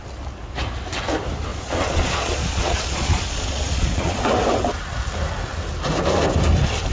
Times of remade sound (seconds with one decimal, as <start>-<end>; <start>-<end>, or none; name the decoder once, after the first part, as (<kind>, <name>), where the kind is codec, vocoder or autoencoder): 1.5-4.3 (vocoder, Vocos)